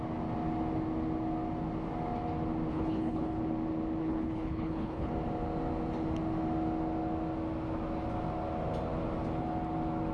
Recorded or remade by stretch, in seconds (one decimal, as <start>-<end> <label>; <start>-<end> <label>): 0.0-2.7 recorded; 2.7-3.4 remade; 3.4-4.0 recorded; 4.0-5.1 remade; 5.1-10.1 recorded